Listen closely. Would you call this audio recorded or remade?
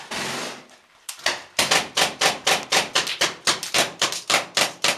remade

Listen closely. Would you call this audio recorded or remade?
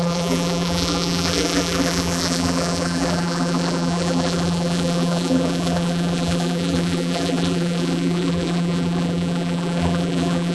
remade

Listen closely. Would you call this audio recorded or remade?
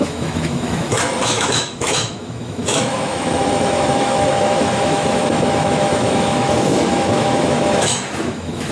remade